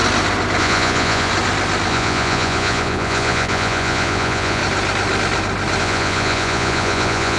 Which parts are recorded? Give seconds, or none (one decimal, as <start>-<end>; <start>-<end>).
0.0-0.6; 1.3-1.9; 4.6-5.8